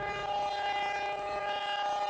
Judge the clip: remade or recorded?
recorded